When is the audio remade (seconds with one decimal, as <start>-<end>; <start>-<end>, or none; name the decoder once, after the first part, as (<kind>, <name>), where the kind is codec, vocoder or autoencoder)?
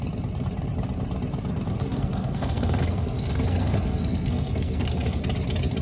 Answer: 1.7-5.2 (codec, SNAC)